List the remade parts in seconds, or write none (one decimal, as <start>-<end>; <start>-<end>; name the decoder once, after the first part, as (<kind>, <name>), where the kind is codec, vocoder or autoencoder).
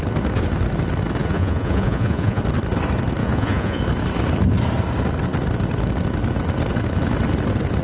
1.2-2.4 (vocoder, Vocos); 3.2-3.8